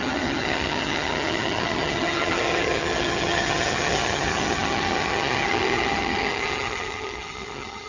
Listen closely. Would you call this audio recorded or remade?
remade